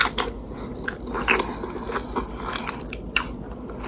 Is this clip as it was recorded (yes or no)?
yes